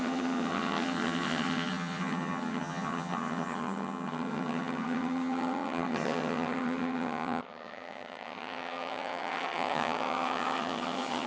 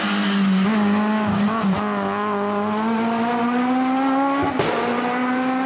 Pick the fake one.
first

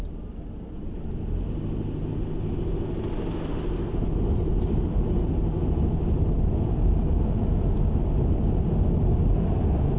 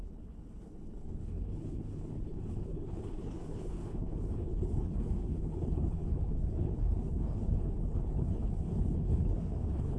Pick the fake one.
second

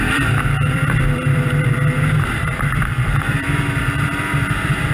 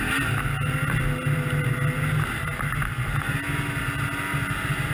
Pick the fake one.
first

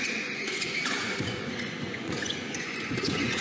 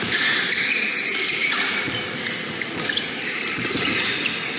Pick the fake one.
first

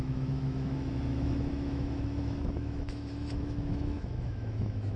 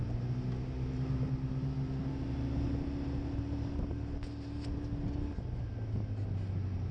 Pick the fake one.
first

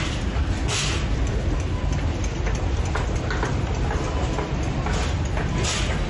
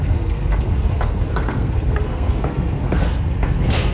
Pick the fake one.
second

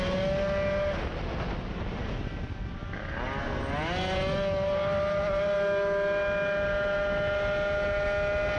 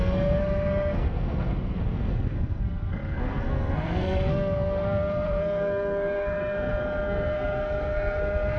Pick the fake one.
second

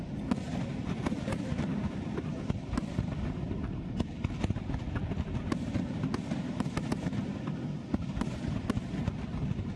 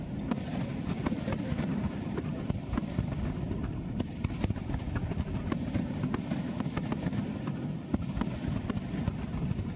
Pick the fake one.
second